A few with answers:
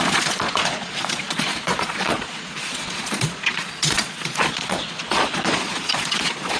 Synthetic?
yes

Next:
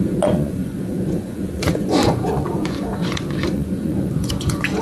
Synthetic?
yes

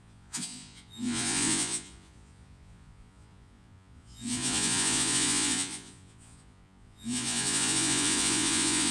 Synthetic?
yes